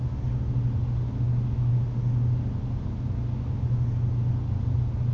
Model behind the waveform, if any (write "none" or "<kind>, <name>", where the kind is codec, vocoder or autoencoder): none